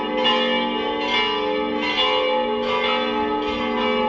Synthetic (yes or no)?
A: no